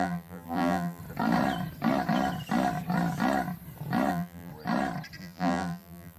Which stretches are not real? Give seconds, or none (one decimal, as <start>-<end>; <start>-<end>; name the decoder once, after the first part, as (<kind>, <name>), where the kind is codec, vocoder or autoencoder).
0.0-1.0 (vocoder, BigVGAN v2); 4.1-4.5; 5.2-6.2